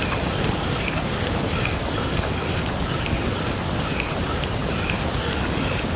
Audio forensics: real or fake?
real